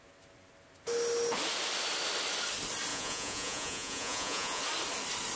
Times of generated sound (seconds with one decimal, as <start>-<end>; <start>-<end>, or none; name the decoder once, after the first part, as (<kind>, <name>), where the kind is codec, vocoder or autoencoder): 2.9-4.6 (vocoder, Vocos)

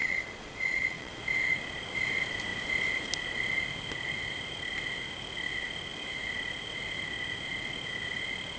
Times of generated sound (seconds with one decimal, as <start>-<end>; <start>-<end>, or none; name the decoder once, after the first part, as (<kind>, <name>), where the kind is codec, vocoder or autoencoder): 0.0-1.2 (vocoder, Vocos)

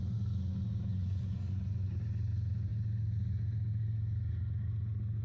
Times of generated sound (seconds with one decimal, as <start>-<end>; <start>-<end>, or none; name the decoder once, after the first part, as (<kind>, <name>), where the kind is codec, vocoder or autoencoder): 0.9-1.9 (vocoder, Vocos)

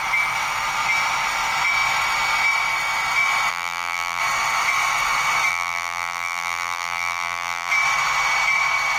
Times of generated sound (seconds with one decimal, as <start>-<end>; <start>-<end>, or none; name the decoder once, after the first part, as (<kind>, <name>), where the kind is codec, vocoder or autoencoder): 3.5-4.2 (vocoder, BigVGAN v2); 5.5-7.7